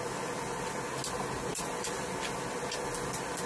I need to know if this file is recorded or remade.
recorded